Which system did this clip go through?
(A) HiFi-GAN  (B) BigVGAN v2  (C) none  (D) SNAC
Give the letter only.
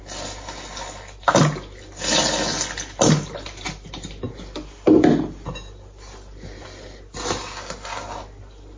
C